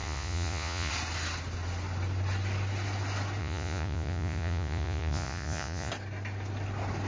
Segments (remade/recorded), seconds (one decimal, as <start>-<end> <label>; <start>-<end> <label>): 0.0-0.9 remade; 0.9-3.4 recorded; 3.4-5.9 remade; 5.9-7.1 recorded